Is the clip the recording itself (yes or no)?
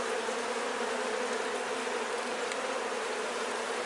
yes